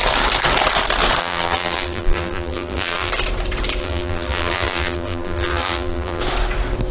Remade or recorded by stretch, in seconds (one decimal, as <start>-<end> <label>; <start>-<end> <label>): 0.0-1.2 recorded; 1.2-3.1 remade; 3.1-3.8 recorded; 3.8-6.2 remade; 6.2-6.9 recorded